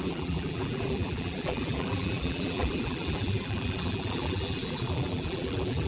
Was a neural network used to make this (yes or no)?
yes